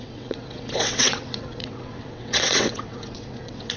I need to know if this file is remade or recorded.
remade